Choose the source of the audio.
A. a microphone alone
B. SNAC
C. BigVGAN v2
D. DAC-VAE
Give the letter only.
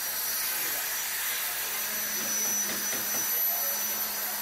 A